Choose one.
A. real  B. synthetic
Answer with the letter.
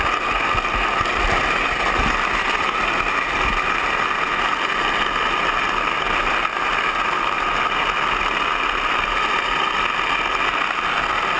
A